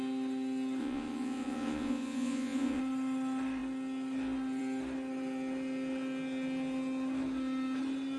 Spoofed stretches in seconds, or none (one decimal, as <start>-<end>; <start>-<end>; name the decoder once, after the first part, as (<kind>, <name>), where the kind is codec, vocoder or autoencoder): 0.8-2.8 (vocoder, Vocos)